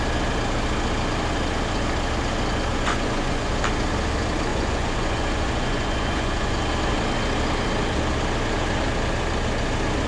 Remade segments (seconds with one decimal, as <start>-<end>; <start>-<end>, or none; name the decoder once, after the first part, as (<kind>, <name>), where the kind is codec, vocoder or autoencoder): 2.7-3.5 (vocoder, Vocos); 4.5-6.6